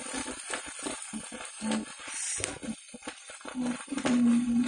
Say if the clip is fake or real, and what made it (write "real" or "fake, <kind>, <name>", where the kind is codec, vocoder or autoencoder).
real